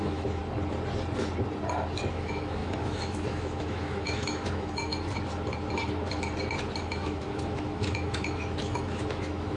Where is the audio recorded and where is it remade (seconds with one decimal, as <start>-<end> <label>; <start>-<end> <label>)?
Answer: 0.0-0.4 remade; 0.4-2.1 recorded; 2.1-4.9 remade; 4.9-6.8 recorded; 6.8-9.6 remade